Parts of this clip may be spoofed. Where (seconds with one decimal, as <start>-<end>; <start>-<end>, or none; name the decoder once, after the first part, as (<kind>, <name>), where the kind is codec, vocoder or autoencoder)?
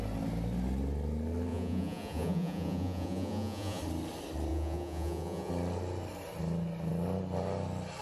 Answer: 1.5-3.8 (vocoder, Vocos); 4.5-5.5